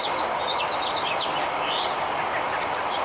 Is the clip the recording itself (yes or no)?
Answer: yes